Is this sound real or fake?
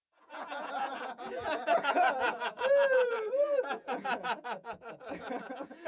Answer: fake